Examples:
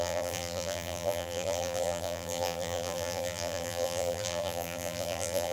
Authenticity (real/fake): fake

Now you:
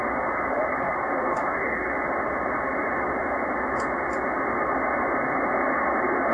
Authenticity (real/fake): real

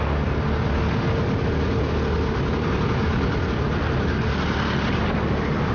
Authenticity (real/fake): real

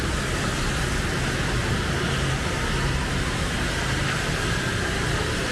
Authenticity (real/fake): real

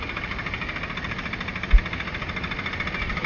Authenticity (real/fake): real